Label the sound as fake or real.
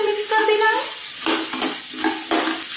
real